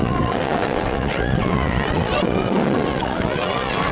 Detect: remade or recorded remade